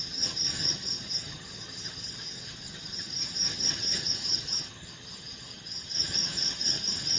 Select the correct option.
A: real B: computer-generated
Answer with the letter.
B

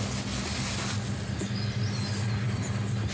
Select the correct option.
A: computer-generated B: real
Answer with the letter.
B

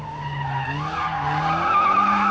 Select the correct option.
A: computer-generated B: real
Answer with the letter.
B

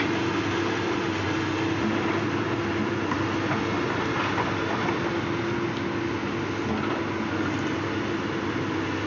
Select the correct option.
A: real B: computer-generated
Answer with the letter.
A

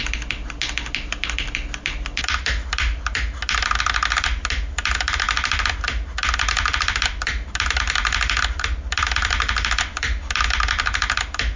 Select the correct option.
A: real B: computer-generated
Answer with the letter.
A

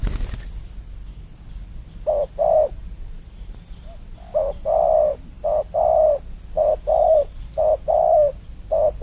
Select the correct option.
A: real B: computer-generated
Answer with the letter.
A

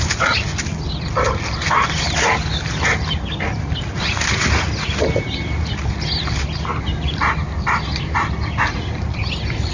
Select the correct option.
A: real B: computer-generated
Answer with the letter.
A